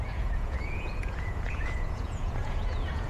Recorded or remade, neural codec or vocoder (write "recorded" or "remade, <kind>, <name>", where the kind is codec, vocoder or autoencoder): remade, vocoder, Vocos